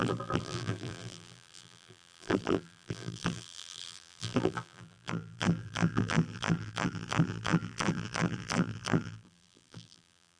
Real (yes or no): no